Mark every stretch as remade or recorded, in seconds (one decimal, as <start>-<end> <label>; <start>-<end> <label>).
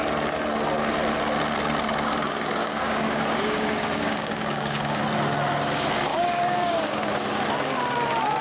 0.0-2.6 recorded; 2.6-5.0 remade; 5.0-6.1 recorded; 6.1-7.1 remade; 7.1-8.4 recorded